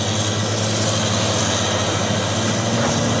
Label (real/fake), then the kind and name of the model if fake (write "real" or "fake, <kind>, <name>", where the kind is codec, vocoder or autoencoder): real